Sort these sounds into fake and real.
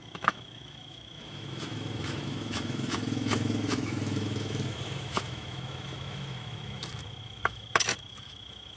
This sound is fake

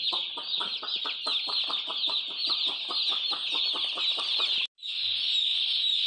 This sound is real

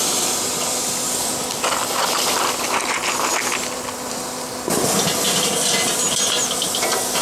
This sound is real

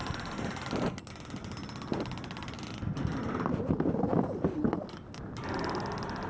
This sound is real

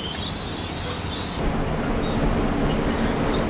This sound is real